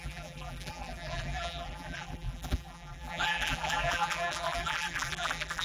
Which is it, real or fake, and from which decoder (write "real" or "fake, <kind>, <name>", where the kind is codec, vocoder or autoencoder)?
fake, vocoder, BigVGAN v2